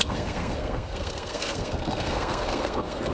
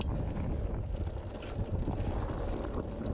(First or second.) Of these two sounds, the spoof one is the first